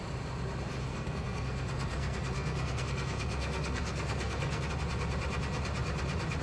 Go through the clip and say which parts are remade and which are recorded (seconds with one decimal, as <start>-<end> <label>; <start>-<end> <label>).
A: 0.0-0.9 recorded; 0.9-4.7 remade; 4.7-6.4 recorded